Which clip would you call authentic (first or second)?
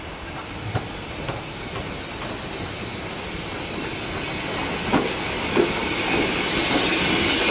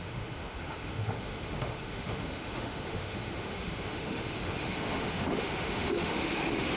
first